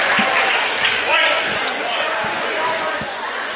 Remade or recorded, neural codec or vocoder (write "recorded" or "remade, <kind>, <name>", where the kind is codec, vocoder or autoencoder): remade, vocoder, Vocos